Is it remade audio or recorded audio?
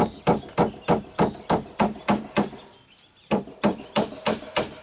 recorded